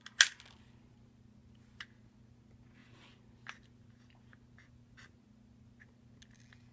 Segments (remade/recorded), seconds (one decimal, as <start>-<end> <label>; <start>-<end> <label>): 0.0-6.7 recorded